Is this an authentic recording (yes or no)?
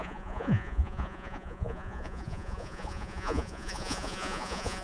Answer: no